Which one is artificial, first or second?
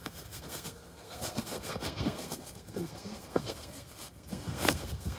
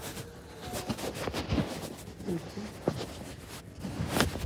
first